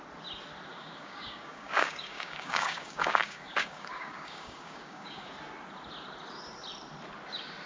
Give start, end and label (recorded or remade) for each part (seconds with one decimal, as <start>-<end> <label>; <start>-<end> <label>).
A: 0.0-0.7 recorded; 0.7-5.3 remade; 5.3-7.7 recorded